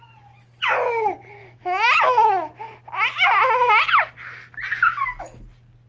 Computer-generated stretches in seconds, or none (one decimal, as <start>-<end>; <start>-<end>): 1.4-2.0